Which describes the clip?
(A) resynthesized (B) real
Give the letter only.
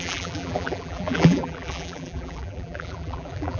A